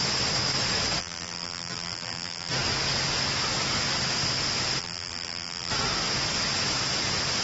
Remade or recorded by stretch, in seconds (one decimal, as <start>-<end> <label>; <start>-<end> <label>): 0.0-1.0 recorded; 1.0-2.5 remade; 2.5-4.8 recorded; 4.8-5.7 remade; 5.7-7.4 recorded